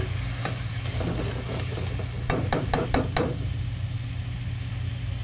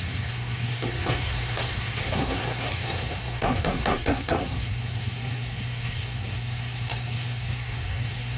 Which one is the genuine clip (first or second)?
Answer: first